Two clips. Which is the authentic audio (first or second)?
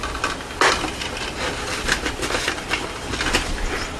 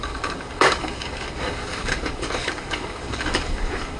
first